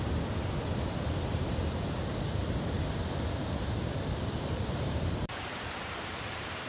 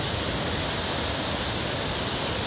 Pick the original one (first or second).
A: second